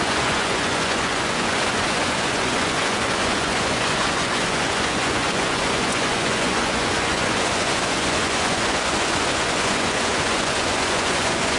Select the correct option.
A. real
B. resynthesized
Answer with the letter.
B